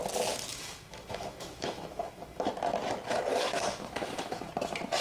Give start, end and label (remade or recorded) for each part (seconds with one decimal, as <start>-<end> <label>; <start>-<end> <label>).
0.0-0.5 recorded; 0.5-2.5 remade; 2.5-3.3 recorded; 3.3-4.5 remade; 4.5-5.0 recorded